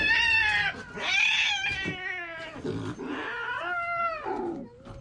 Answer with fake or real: real